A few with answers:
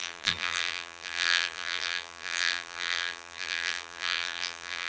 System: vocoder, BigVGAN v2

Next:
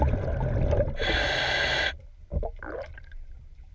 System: none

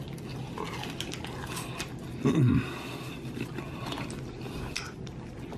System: none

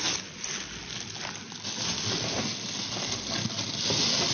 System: none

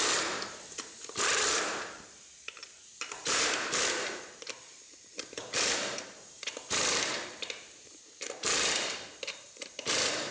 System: vocoder, BigVGAN v2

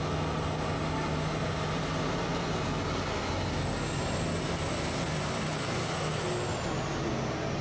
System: none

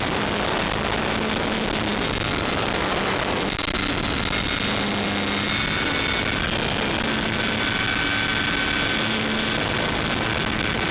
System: none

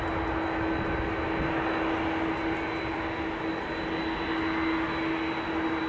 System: none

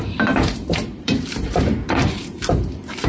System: vocoder, BigVGAN v2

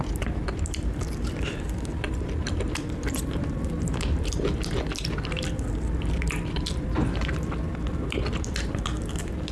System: vocoder, BigVGAN v2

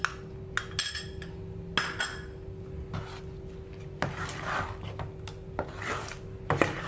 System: none